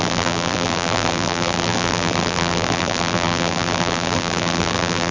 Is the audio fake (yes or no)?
yes